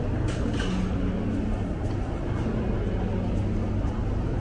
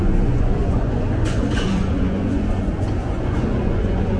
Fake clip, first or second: second